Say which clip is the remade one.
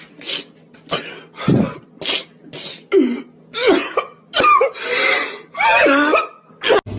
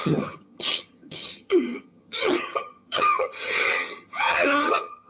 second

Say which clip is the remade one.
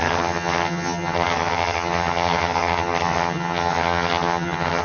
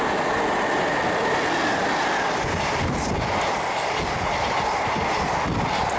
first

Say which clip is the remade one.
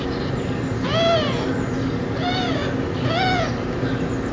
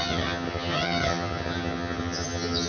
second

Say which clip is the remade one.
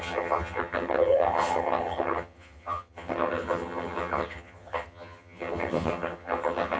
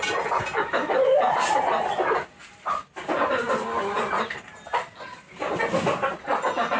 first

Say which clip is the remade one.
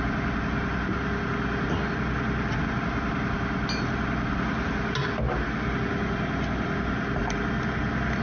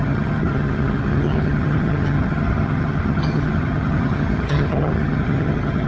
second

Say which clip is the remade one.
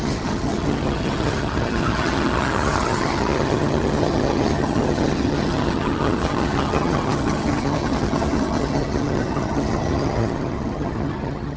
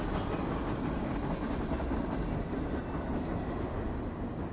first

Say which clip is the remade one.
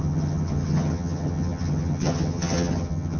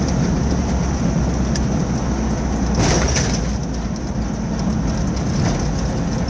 first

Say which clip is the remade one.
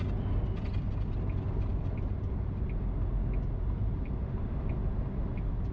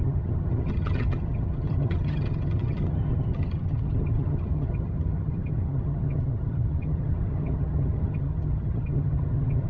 second